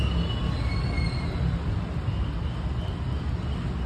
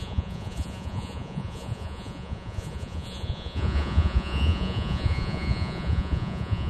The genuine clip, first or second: first